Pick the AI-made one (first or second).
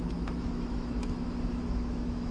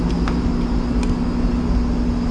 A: first